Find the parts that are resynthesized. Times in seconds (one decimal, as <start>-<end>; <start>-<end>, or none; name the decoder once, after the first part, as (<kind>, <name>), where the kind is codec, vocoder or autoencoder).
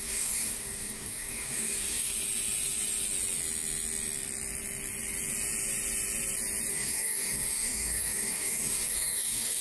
0.0-2.1 (codec, DAC); 6.7-9.6